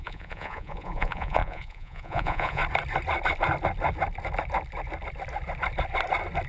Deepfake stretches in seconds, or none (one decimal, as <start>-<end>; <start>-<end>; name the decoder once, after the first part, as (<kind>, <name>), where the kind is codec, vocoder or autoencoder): 0.0-2.6 (vocoder, Vocos)